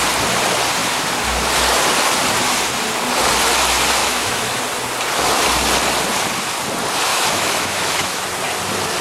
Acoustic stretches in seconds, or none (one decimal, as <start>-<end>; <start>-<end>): 0.0-4.0; 4.6-7.1; 8.2-9.0